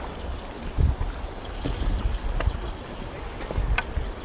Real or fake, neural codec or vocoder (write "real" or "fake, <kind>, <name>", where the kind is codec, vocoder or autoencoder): real